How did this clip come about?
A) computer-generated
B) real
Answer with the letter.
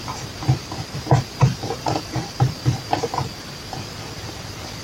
A